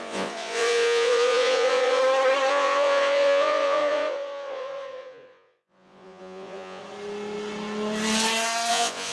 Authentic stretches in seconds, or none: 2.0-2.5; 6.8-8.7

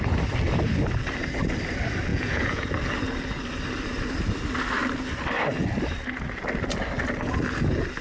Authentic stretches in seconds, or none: 0.0-2.1; 2.7-8.0

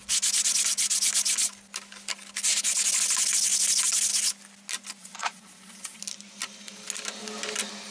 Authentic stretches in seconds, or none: 0.0-5.0; 6.0-7.9

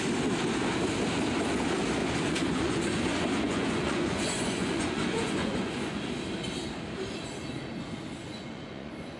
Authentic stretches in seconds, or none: 0.0-2.0; 6.0-8.2